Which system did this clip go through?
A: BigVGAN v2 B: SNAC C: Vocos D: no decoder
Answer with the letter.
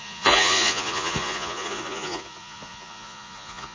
C